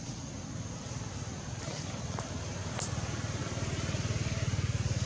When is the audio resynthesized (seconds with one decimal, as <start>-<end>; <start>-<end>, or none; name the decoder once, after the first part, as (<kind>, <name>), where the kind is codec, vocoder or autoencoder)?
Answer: none